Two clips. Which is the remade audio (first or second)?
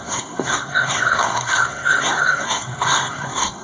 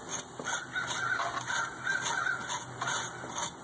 first